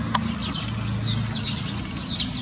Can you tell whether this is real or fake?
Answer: real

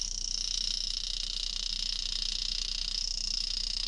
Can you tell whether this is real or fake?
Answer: fake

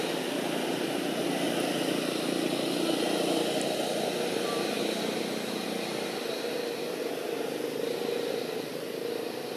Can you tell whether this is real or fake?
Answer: real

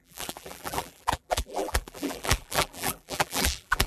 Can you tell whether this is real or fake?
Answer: fake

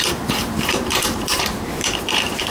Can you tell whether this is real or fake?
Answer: fake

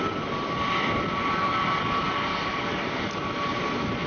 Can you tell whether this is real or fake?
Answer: real